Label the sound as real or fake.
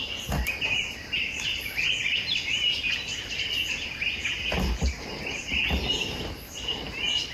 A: real